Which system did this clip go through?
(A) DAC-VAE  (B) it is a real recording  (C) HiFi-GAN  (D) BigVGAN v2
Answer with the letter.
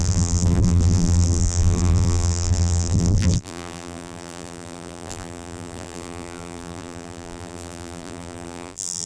D